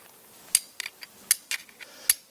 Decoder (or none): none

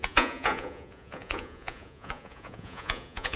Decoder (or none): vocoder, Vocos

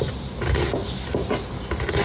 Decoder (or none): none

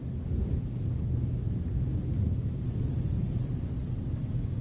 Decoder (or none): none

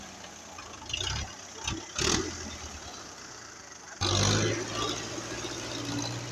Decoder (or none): none